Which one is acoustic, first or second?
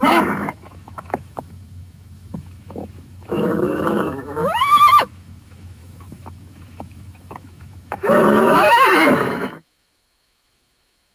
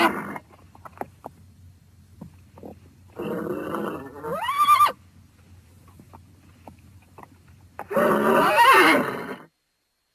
second